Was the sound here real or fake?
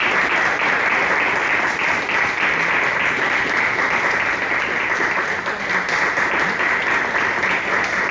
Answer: real